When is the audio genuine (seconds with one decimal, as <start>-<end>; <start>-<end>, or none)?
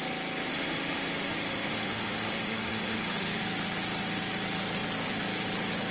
0.0-0.5; 3.4-5.9